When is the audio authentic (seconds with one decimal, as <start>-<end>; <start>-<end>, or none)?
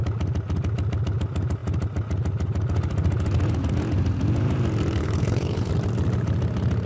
0.0-5.0; 5.7-6.9